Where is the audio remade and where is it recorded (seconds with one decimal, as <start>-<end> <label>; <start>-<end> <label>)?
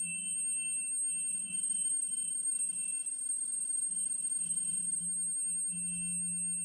0.0-1.3 recorded; 1.3-5.0 remade; 5.0-6.6 recorded